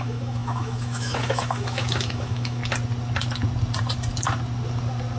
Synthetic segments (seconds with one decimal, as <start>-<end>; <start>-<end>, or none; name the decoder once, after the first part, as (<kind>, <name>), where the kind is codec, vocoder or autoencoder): 0.0-2.6 (autoencoder, DAC-VAE)